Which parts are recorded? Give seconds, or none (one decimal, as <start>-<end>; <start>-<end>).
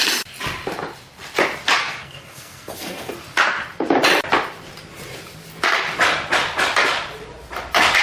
0.0-1.8; 3.1-8.0